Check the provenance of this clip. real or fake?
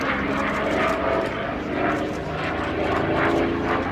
real